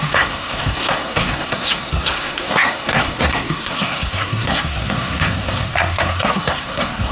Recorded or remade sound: remade